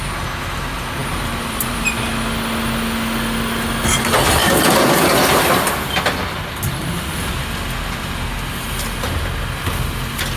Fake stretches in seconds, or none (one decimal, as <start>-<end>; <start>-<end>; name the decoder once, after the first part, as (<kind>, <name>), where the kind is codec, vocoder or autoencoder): 1.0-1.9 (vocoder, BigVGAN v2)